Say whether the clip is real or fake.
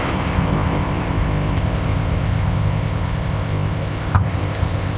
fake